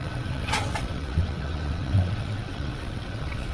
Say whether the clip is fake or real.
fake